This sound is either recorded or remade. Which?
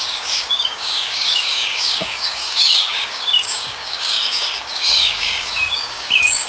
remade